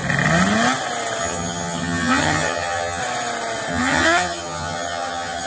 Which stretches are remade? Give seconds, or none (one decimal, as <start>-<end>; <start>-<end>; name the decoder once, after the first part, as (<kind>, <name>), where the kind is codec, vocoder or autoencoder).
1.2-3.0 (vocoder, HiFi-GAN); 3.7-5.5